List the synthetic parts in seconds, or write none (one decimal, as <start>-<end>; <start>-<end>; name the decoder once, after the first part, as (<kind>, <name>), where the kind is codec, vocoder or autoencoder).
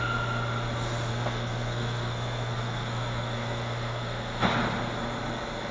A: 1.1-4.5 (codec, SNAC)